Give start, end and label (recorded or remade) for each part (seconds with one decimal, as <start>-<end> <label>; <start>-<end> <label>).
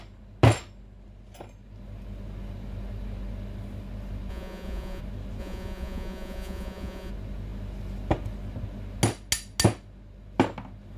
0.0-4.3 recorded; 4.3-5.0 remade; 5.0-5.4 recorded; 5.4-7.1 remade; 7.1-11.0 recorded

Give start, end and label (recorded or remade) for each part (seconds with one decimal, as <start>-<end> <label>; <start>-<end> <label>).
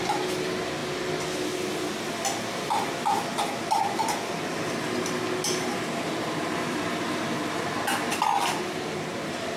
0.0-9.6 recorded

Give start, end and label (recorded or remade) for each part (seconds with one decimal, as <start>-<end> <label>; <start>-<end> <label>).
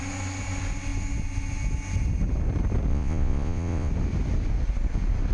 0.0-2.9 recorded; 2.9-3.9 remade; 3.9-5.3 recorded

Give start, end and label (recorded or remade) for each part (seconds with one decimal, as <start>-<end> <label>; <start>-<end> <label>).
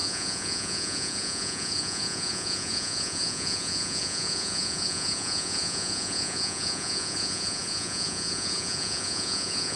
0.0-9.8 remade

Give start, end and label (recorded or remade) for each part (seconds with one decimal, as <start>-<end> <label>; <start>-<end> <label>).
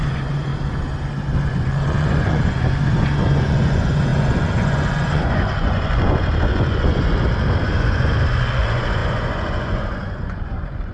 0.0-0.5 remade; 0.5-1.5 recorded; 1.5-7.1 remade; 7.1-7.6 recorded; 7.6-10.9 remade